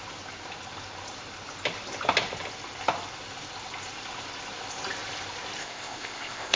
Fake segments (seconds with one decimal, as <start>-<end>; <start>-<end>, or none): 5.6-6.6